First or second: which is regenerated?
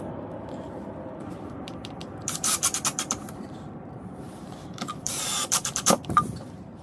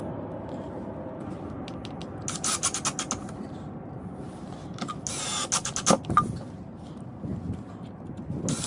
first